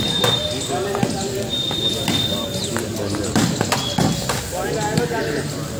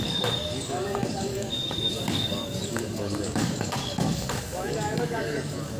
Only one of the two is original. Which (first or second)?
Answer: first